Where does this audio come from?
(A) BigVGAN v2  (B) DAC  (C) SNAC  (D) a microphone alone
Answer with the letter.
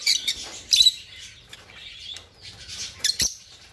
A